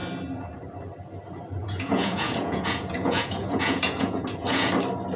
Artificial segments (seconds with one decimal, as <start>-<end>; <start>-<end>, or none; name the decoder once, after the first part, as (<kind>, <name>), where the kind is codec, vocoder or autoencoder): 1.6-4.7 (vocoder, Vocos)